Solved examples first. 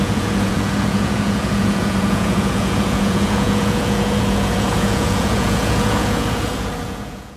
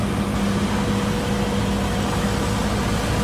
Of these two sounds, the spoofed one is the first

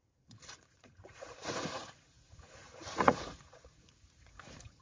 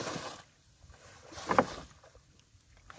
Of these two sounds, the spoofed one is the first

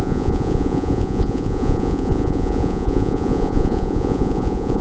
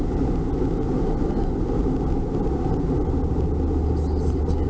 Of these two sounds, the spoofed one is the first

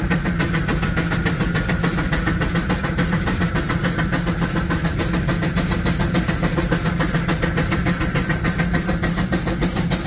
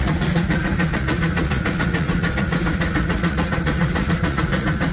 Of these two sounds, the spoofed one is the second